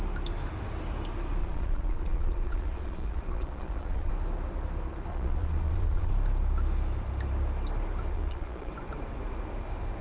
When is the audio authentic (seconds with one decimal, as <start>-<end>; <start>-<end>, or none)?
0.0-1.4; 4.1-5.1; 6.1-8.1; 8.7-10.0